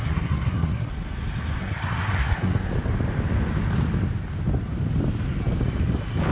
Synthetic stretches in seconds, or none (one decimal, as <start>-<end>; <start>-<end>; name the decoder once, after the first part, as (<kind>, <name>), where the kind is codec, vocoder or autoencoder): 0.0-0.9 (codec, SNAC); 1.6-2.7